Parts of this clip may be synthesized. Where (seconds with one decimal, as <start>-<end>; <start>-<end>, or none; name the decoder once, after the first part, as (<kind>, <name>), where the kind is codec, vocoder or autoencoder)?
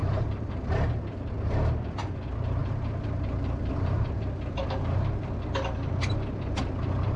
0.0-0.7 (vocoder, BigVGAN v2); 2.6-4.1; 4.6-5.3